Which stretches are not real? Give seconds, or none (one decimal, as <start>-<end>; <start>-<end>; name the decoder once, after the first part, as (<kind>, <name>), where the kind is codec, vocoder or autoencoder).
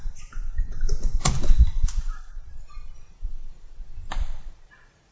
0.0-5.1 (vocoder, BigVGAN v2)